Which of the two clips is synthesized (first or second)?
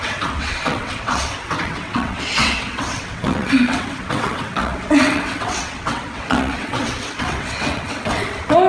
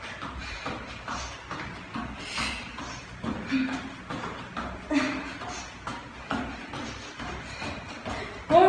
first